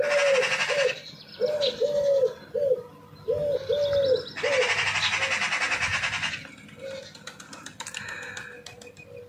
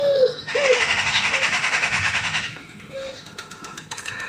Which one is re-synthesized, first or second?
second